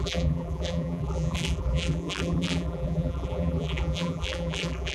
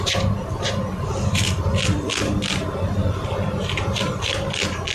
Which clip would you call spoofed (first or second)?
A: first